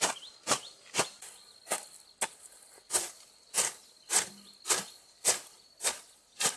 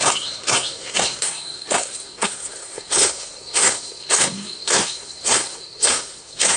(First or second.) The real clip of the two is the first